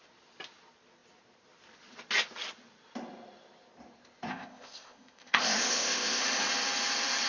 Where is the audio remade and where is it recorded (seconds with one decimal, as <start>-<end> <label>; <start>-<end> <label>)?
0.0-4.3 recorded; 4.3-6.2 remade; 6.2-7.3 recorded